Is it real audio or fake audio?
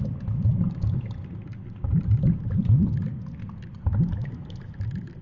real